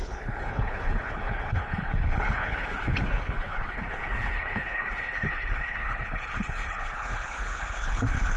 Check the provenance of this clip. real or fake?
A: fake